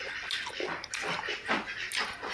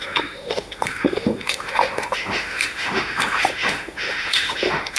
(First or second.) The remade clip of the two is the second